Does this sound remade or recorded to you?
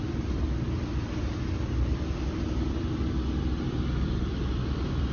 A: remade